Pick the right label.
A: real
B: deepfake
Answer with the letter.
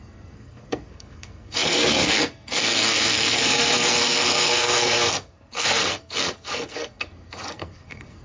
B